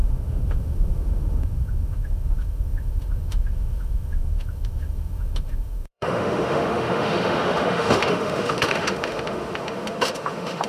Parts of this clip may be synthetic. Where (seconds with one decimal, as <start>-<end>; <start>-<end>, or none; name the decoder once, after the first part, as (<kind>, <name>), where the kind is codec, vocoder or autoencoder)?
0.0-10.7 (autoencoder, DAC-VAE)